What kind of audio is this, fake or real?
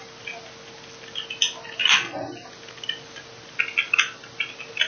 real